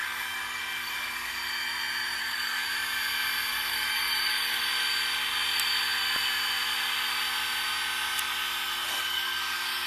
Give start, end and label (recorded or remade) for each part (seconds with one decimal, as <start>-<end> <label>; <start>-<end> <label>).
0.0-1.3 remade; 1.3-2.2 recorded; 2.2-2.7 remade; 2.7-3.5 recorded; 3.5-4.6 remade; 4.6-8.8 recorded; 8.8-9.9 remade